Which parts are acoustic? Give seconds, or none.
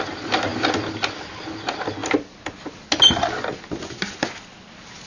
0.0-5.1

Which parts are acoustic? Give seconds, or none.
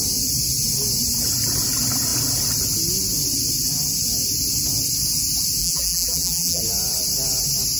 0.0-5.6; 6.6-7.8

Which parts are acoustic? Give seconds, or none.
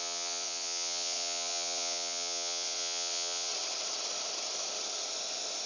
3.5-5.7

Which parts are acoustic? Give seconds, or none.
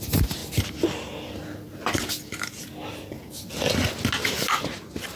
0.0-5.2